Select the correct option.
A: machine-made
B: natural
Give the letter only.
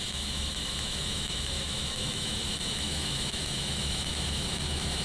A